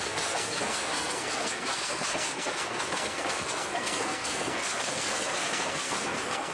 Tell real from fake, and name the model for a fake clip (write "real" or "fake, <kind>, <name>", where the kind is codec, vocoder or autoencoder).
fake, codec, SNAC